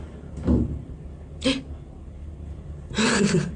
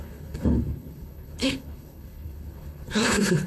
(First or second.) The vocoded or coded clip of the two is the second